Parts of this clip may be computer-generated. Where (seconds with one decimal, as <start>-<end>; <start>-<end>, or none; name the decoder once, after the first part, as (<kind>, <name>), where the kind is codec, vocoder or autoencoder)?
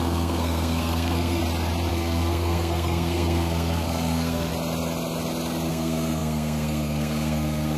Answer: 0.0-1.4 (codec, SNAC); 1.9-4.5; 5.7-7.8